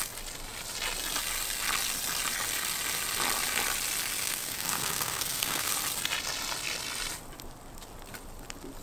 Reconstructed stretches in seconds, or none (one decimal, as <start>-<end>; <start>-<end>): 4.2-5.7